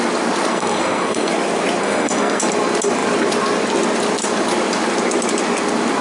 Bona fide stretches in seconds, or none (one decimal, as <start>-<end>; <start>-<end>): 0.0-0.5; 1.3-1.8; 2.4-6.0